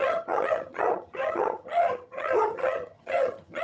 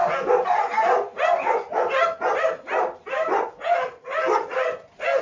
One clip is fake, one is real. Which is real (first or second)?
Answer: second